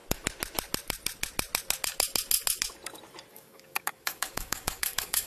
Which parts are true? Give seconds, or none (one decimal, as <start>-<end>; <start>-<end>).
0.0-3.3